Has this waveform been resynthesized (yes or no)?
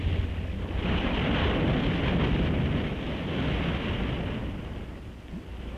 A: no